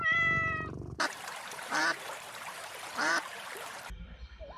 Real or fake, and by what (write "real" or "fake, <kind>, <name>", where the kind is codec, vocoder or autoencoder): fake, vocoder, BigVGAN v2